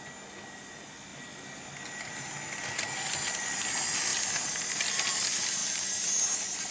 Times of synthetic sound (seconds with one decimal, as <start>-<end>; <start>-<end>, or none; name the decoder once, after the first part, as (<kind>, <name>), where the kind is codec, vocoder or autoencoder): none